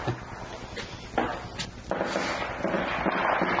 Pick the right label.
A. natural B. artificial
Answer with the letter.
A